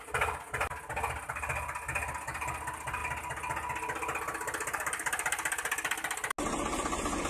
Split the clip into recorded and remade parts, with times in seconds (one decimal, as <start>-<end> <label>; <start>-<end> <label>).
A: 0.0-7.3 recorded